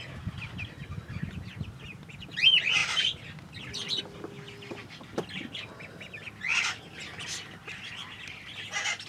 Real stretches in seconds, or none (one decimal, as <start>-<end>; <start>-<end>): 0.0-2.8; 4.0-9.1